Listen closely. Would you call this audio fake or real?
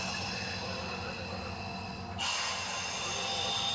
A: real